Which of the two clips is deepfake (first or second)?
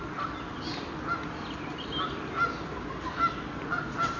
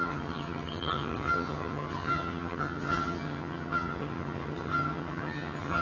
second